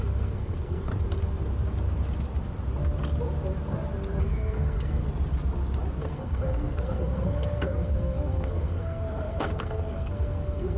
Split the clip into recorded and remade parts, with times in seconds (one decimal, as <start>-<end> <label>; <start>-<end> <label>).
0.0-0.9 remade; 0.9-4.2 recorded; 4.2-5.0 remade; 5.0-6.0 recorded; 6.0-10.8 remade